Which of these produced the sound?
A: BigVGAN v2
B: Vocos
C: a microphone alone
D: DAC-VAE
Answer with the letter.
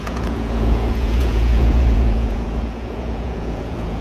B